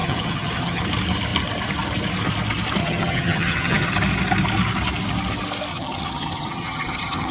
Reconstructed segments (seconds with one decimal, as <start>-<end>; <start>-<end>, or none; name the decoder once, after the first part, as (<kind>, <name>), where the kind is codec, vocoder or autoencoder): 0.0-0.8 (vocoder, HiFi-GAN); 2.8-3.9; 5.7-7.3